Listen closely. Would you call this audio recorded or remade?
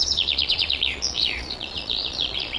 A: remade